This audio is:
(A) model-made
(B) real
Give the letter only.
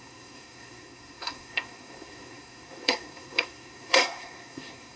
A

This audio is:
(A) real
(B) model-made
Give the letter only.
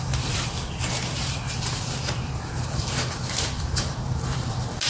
B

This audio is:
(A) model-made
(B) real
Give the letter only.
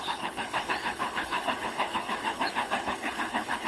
A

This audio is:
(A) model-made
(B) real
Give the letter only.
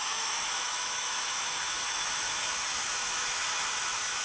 A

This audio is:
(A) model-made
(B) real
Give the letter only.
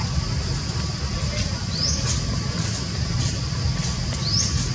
B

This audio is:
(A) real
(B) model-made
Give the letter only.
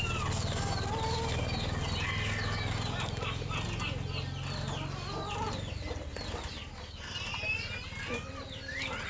A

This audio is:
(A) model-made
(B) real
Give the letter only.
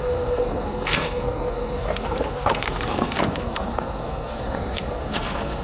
A